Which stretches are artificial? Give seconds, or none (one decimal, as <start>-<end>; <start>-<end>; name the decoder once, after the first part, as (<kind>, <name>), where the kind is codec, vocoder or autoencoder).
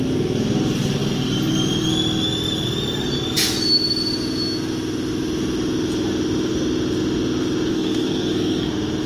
7.7-8.7 (codec, SNAC)